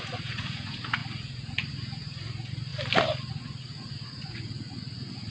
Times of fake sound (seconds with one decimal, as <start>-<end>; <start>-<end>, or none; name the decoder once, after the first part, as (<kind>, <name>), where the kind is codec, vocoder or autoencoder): 0.0-2.7 (vocoder, Vocos); 3.3-5.3